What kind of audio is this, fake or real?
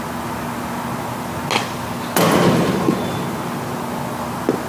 real